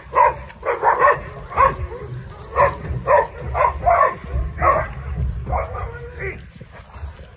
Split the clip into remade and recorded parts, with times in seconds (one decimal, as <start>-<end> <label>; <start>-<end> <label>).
0.0-7.4 recorded